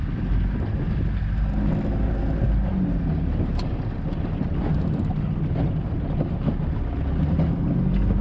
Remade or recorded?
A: recorded